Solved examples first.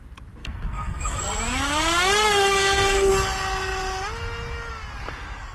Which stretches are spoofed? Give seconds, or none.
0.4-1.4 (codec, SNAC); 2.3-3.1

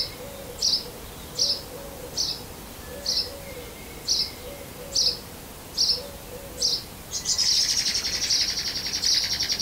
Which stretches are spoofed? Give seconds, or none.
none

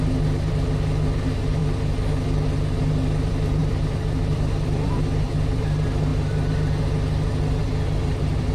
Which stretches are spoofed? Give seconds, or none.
3.6-5.6 (vocoder, BigVGAN v2); 7.6-8.5